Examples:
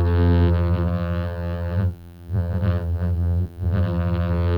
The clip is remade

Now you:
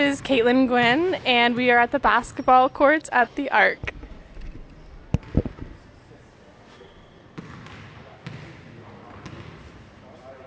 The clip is recorded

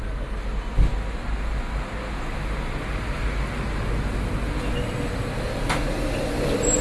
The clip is recorded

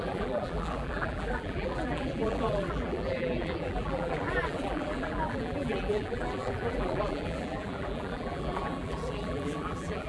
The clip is remade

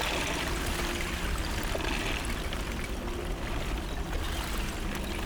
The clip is recorded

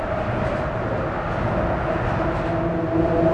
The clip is recorded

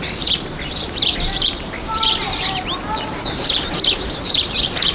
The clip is remade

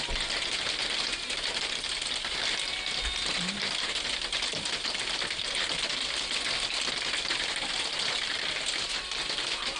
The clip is remade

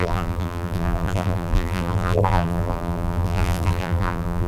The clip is remade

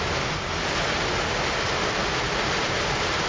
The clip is recorded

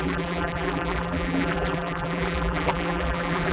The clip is remade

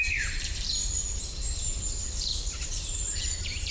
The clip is remade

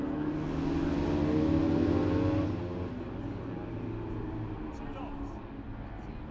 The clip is recorded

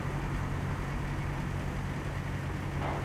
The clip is recorded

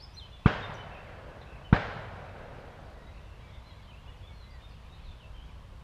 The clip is recorded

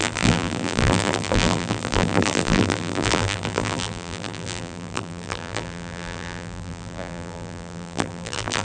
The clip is remade